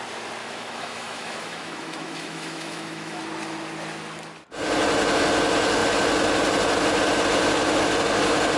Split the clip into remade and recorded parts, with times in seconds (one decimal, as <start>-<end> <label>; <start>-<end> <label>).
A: 0.0-0.4 recorded; 0.4-3.2 remade; 3.2-8.6 recorded